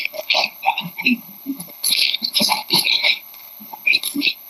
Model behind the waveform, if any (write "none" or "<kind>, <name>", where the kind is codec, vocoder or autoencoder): codec, HILCodec